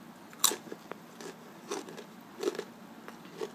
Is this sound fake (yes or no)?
no